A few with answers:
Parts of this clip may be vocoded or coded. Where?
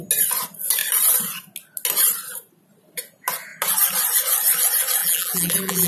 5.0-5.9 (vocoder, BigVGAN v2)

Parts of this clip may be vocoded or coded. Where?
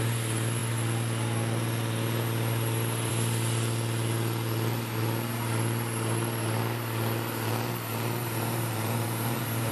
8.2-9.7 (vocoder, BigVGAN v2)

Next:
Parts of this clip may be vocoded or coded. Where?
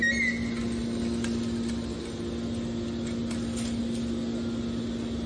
none